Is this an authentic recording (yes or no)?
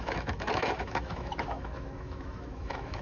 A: no